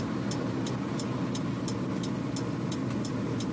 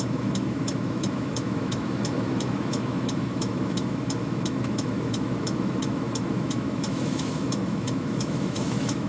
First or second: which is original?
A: first